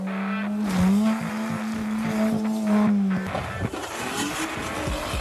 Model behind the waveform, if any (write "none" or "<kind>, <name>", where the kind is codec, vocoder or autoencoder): none